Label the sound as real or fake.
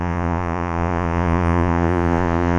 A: fake